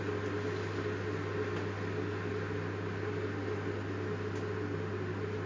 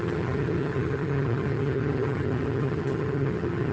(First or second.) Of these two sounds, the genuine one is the first